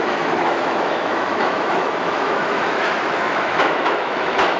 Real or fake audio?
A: fake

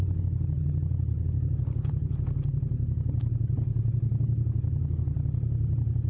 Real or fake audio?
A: real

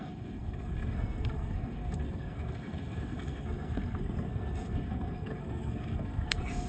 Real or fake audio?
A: fake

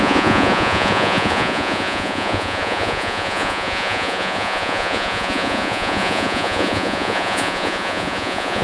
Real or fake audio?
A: fake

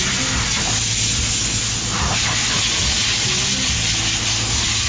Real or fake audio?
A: real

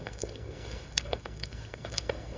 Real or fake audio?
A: fake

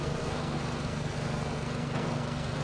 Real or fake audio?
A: fake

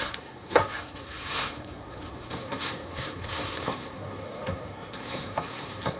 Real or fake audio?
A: fake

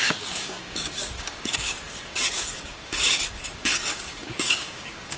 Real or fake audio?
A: fake